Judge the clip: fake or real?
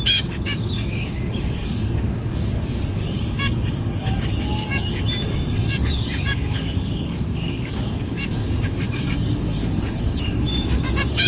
fake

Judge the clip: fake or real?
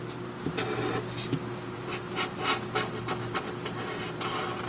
real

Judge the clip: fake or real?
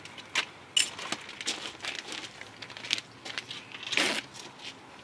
real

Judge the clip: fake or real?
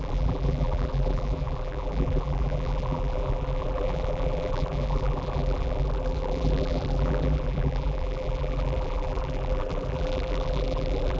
fake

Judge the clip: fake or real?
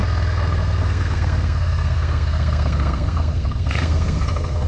fake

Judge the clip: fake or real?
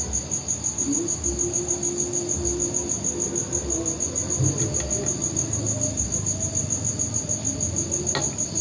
real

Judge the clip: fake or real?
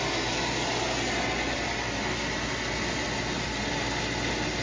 real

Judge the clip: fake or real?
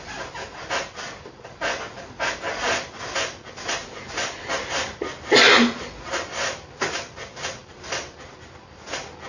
real